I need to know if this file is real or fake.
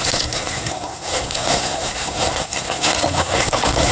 fake